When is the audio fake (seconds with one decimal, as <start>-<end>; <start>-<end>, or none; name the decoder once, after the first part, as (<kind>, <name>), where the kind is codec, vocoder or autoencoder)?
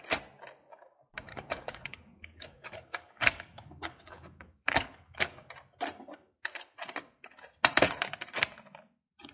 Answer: 1.3-5.5 (codec, DAC)